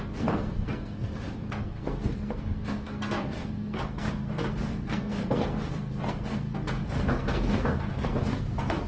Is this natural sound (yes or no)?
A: no